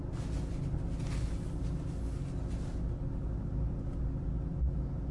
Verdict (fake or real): real